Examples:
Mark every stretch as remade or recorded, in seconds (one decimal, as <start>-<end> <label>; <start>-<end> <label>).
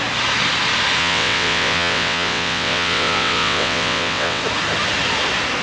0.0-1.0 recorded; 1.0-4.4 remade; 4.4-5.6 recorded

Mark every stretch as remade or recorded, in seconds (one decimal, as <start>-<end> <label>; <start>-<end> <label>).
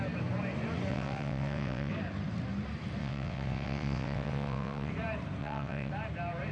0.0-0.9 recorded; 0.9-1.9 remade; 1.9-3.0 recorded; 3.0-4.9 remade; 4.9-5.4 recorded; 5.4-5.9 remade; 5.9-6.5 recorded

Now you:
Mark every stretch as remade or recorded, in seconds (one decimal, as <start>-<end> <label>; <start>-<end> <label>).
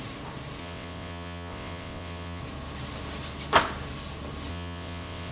0.0-0.6 recorded; 0.6-2.4 remade; 2.4-4.5 recorded; 4.5-5.3 remade